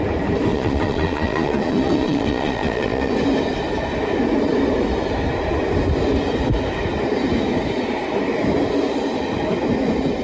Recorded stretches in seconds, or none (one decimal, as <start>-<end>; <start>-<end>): 0.0-0.5; 3.1-10.2